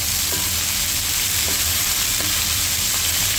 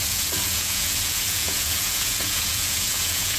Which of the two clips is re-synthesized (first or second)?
second